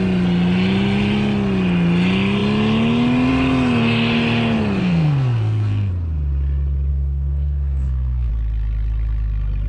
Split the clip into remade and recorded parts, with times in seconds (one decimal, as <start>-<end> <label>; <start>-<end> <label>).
0.0-4.8 recorded; 4.8-5.9 remade; 5.9-6.9 recorded; 6.9-8.3 remade; 8.3-9.7 recorded